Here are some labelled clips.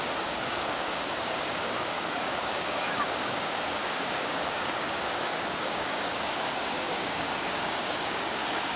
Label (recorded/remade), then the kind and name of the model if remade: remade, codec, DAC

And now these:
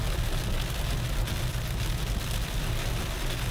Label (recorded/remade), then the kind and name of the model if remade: recorded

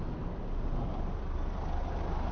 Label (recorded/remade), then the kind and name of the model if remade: recorded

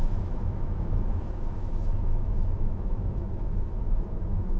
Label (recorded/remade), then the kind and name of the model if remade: remade, autoencoder, DAC-VAE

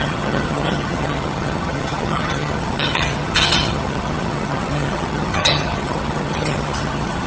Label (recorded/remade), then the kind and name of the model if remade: remade, vocoder, HiFi-GAN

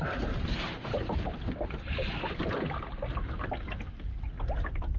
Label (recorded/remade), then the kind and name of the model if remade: recorded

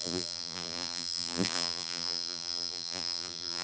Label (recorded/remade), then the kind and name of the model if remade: remade, vocoder, BigVGAN v2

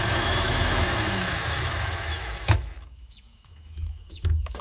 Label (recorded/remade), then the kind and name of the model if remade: remade, autoencoder, DAC-VAE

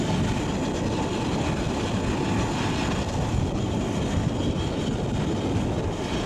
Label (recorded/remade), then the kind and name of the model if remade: recorded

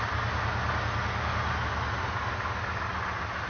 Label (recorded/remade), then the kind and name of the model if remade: recorded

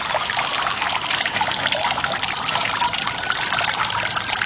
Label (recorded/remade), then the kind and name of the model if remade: recorded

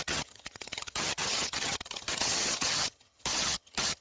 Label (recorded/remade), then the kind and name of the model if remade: remade, vocoder, HiFi-GAN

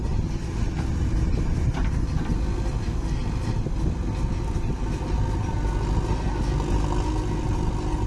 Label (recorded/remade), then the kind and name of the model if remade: recorded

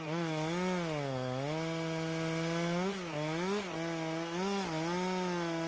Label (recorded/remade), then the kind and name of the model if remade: recorded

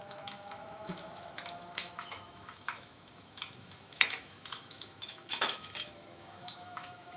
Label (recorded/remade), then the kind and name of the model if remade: remade, autoencoder, DAC-VAE